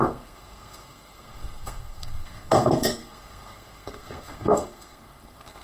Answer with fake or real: fake